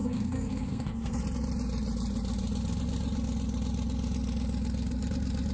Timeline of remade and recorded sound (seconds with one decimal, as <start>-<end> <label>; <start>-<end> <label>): 0.0-1.2 remade; 1.2-5.5 recorded

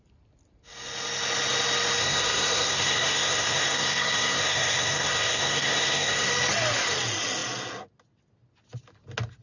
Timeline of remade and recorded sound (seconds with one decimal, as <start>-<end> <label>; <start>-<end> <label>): 0.0-2.0 recorded; 2.0-6.3 remade; 6.3-9.4 recorded

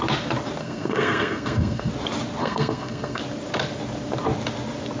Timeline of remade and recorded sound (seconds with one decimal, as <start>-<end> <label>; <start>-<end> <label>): 0.0-0.6 recorded; 0.6-1.9 remade; 1.9-2.4 recorded; 2.4-3.2 remade; 3.2-5.0 recorded

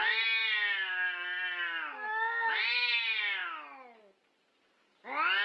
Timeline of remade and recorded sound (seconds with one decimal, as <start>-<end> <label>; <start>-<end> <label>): 0.0-5.4 recorded

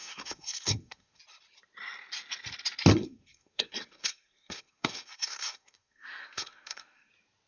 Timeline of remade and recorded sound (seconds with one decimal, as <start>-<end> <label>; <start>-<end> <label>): 0.0-1.2 remade; 1.2-2.9 recorded; 2.9-7.1 remade; 7.1-7.5 recorded

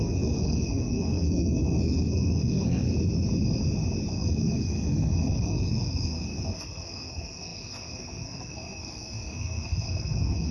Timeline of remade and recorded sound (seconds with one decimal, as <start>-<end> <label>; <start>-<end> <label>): 0.0-2.9 remade; 2.9-4.1 recorded; 4.1-10.5 remade

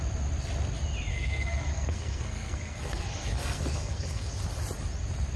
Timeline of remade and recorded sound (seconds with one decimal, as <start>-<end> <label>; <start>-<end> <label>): 0.0-1.1 recorded; 1.1-4.3 remade; 4.3-5.4 recorded

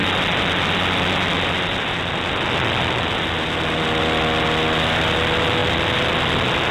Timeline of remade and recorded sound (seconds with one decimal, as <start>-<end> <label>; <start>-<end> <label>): 0.0-6.7 recorded